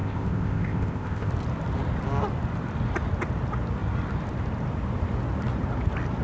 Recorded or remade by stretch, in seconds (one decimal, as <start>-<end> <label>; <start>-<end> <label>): 0.0-1.3 remade; 1.3-6.2 recorded